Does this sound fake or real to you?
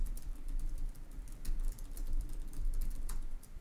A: fake